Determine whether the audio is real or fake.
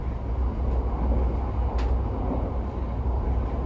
real